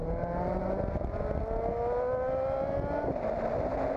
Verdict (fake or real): real